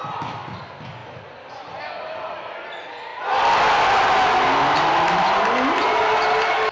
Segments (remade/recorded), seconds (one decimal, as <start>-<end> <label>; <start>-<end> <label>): 0.0-6.7 recorded